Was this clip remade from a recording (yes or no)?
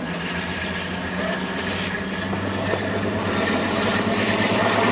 no